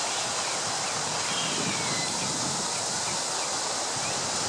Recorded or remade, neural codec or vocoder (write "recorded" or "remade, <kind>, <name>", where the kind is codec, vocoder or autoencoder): recorded